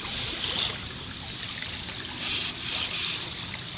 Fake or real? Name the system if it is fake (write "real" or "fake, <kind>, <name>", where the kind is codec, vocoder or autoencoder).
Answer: real